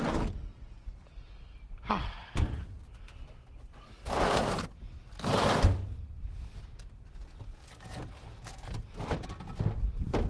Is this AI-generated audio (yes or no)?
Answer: no